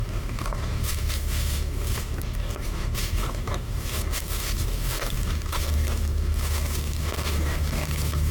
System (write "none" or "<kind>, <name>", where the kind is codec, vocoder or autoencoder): codec, DAC